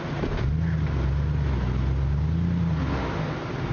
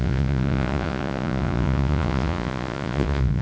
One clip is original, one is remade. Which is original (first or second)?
first